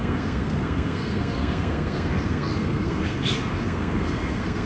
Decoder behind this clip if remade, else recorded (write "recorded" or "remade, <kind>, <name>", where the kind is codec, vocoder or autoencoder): remade, codec, SNAC